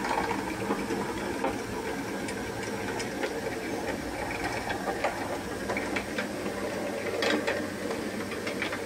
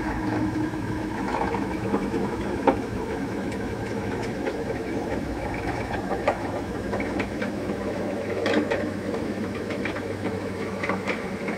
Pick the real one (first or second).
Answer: first